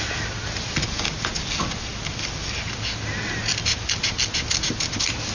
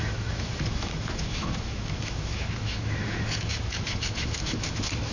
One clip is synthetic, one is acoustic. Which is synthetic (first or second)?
second